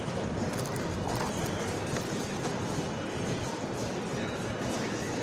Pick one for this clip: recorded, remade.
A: recorded